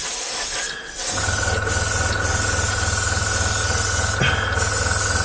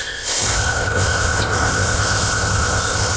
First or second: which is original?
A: first